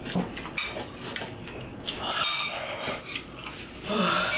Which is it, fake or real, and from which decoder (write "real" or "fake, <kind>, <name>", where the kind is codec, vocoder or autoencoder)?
real